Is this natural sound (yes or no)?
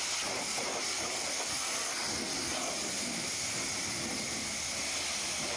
yes